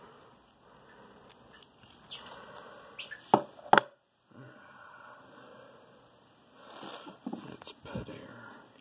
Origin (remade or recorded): recorded